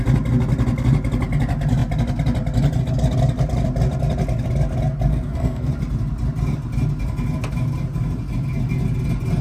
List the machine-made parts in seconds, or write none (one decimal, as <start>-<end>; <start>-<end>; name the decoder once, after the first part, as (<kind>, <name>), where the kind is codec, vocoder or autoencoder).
5.1-5.7 (codec, SNAC)